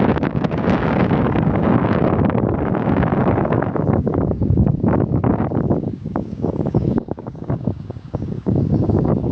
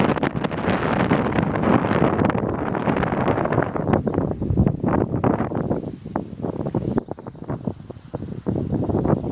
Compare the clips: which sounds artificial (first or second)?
first